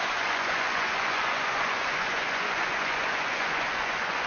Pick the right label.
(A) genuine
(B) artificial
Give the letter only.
B